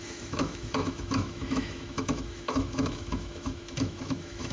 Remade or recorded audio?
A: remade